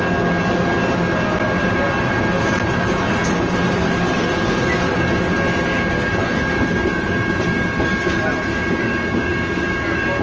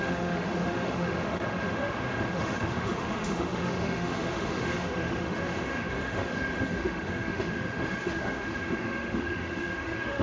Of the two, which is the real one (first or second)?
first